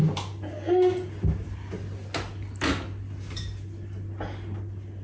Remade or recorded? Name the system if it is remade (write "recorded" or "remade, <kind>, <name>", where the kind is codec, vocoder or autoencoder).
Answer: recorded